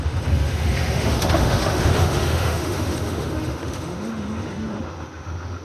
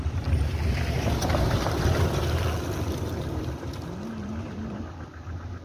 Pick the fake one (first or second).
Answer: first